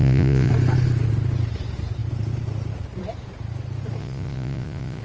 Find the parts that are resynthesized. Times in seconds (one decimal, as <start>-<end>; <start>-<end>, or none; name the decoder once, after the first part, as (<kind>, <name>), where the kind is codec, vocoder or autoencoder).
0.0-0.5 (vocoder, Vocos); 4.0-5.0